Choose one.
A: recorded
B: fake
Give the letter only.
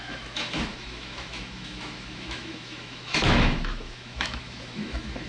B